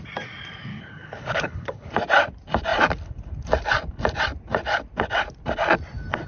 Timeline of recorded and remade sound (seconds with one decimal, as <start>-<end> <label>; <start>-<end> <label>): 0.0-0.7 recorded; 0.7-1.9 remade; 1.9-6.3 recorded